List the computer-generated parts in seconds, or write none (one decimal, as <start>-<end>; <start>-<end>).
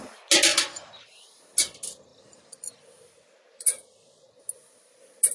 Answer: 0.5-1.4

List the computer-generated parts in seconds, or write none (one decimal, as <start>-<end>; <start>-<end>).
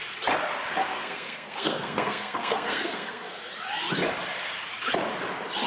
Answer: 0.8-3.4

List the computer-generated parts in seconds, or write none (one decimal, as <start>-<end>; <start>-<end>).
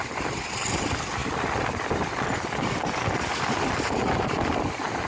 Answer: 0.0-1.2; 4.0-5.1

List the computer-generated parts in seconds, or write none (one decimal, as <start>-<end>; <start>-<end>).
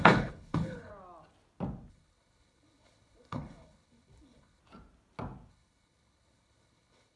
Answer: 0.0-0.9; 1.9-4.6; 5.5-7.2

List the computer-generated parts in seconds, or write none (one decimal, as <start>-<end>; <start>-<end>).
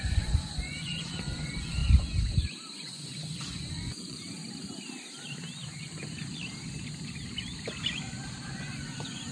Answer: 0.0-1.8; 2.7-4.4; 8.5-9.3